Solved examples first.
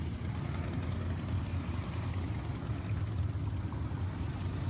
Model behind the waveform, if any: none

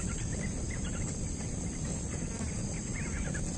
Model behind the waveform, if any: none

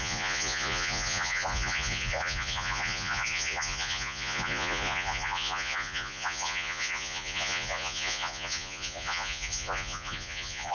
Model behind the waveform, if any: vocoder, Vocos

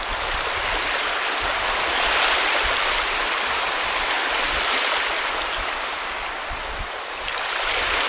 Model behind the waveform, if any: none